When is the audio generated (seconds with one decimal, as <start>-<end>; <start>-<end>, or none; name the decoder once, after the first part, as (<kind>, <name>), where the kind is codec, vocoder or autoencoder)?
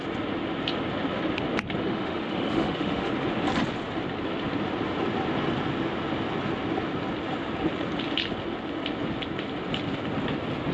1.8-3.1 (autoencoder, DAC-VAE)